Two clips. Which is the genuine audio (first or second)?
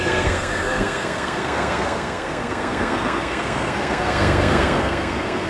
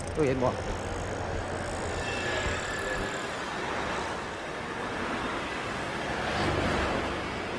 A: second